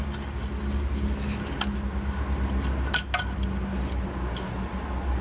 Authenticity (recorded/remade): recorded